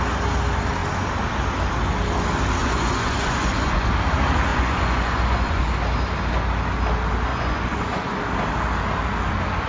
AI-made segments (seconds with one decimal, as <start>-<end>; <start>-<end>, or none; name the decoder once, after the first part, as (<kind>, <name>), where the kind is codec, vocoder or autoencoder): 2.6-3.9 (vocoder, Vocos); 4.5-5.6; 7.3-8.2